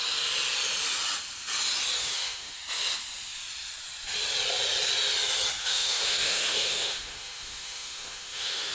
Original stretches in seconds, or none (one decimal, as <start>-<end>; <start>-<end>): 0.0-2.0; 2.6-5.6